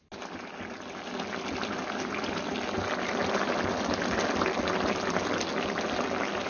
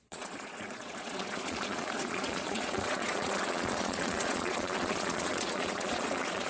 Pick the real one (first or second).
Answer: first